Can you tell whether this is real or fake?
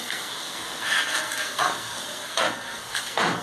fake